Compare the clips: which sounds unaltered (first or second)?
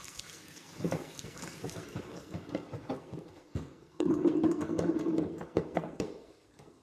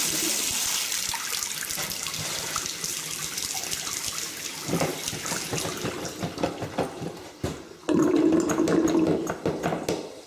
second